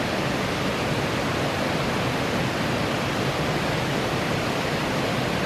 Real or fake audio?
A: real